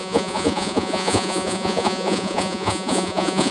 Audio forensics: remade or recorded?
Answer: remade